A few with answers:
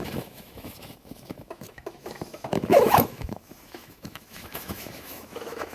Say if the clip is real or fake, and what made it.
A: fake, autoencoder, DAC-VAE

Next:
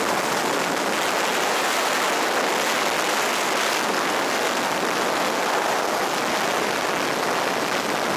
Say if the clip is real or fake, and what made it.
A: real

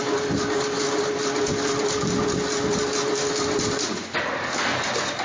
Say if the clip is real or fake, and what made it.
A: real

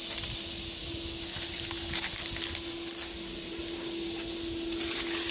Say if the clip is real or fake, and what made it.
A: real